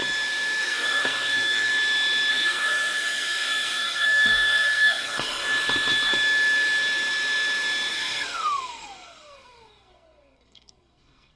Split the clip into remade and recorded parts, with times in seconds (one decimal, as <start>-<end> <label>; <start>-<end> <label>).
0.0-0.6 recorded; 0.6-1.7 remade; 1.7-2.3 recorded; 2.3-5.4 remade; 5.4-7.9 recorded; 7.9-11.4 remade